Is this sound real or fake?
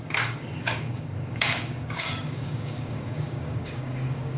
fake